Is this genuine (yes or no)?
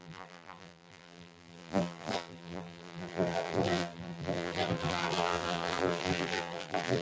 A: no